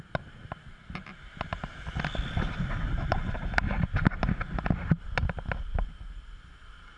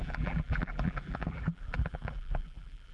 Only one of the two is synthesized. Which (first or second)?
second